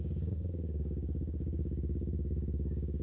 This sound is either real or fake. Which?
fake